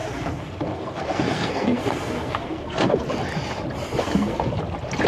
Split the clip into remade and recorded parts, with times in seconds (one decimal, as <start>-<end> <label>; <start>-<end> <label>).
0.0-3.1 remade; 3.1-4.0 recorded; 4.0-4.5 remade; 4.5-5.1 recorded